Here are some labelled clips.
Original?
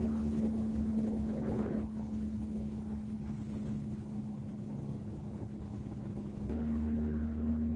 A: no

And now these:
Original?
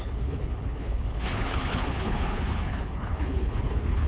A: no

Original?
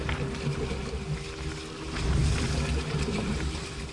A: yes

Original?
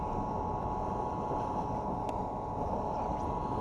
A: yes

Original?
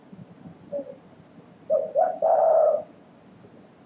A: yes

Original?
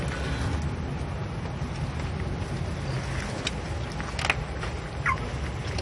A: yes